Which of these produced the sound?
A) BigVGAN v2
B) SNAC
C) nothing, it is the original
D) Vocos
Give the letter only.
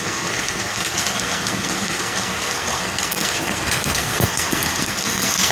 B